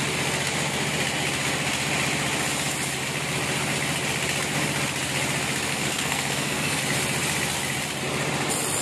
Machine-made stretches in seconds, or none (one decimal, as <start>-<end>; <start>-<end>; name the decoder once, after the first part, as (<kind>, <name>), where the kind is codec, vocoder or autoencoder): 5.7-6.8 (codec, SNAC)